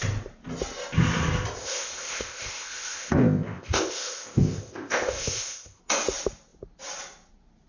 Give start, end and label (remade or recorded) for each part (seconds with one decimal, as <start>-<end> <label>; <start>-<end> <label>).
0.0-1.6 recorded; 1.6-5.8 remade; 5.8-7.7 recorded